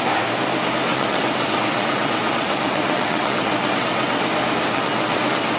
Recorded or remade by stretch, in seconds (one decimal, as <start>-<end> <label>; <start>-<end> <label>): 0.0-0.9 recorded; 0.9-4.2 remade; 4.2-4.7 recorded; 4.7-5.6 remade